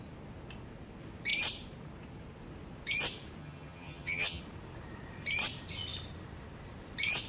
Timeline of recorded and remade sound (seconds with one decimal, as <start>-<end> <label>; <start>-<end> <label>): 0.0-3.4 recorded; 3.4-4.4 remade; 4.4-7.3 recorded